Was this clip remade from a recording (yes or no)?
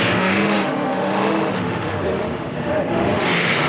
yes